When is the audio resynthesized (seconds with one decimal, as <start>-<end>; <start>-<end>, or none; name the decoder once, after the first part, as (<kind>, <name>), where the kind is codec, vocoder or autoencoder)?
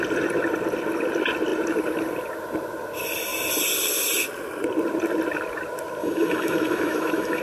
6.0-7.4 (autoencoder, DAC-VAE)